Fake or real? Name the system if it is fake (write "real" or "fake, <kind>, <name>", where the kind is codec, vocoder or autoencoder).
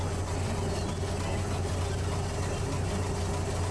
real